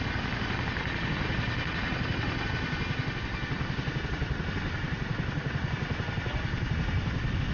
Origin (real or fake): real